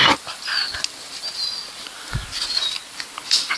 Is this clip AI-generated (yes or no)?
no